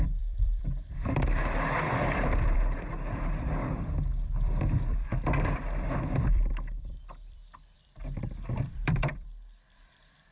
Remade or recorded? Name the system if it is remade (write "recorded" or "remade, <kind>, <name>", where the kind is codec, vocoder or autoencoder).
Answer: remade, vocoder, BigVGAN v2